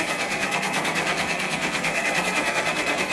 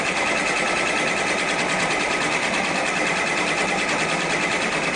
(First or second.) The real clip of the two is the second